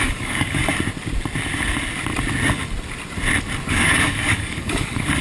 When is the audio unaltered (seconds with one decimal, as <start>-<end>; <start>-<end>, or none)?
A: 0.6-3.7